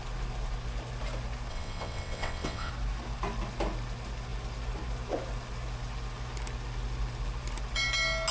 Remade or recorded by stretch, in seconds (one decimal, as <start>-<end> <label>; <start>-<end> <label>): 0.0-1.5 recorded; 1.5-2.7 remade; 2.7-8.3 recorded